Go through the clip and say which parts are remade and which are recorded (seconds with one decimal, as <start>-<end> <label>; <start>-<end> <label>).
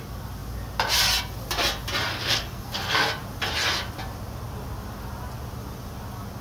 0.0-2.1 recorded; 2.1-3.1 remade; 3.1-6.4 recorded